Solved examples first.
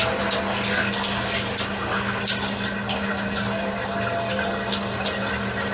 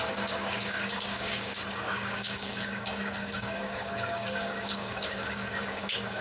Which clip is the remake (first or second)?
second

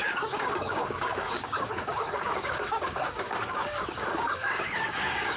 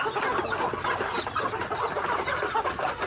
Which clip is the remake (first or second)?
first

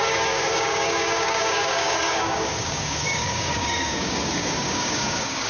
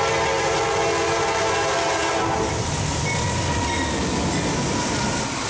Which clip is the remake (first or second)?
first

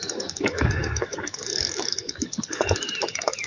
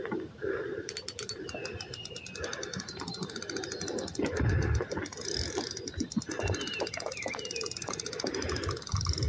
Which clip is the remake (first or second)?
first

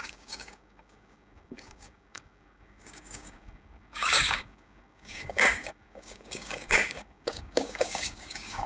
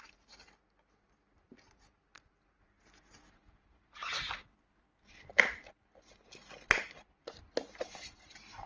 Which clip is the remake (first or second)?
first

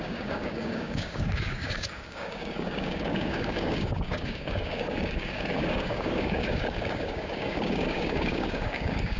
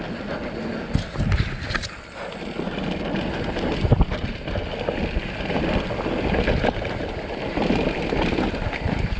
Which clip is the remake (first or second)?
first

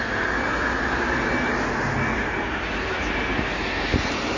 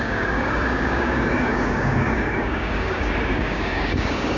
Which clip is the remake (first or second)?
second